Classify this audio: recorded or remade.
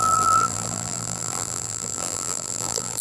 remade